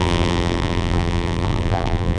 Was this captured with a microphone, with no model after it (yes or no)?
no